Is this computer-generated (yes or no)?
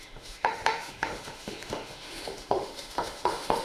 yes